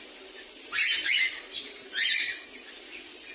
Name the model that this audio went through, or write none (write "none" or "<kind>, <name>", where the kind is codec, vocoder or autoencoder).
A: none